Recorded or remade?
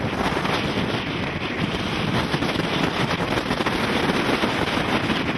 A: recorded